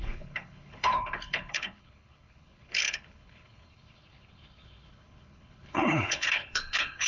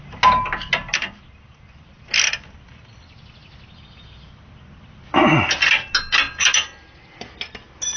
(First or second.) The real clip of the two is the second